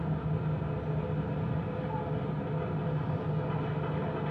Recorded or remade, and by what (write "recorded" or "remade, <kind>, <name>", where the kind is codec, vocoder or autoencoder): recorded